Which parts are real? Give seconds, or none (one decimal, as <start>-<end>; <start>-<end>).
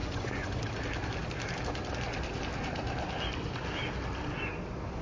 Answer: 0.6-5.0